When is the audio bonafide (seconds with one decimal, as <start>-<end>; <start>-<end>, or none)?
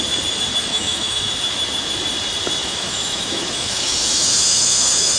0.0-0.7; 1.3-2.6